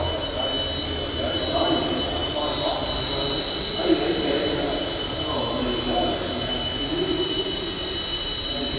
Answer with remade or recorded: recorded